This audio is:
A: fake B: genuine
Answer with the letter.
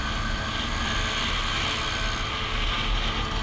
B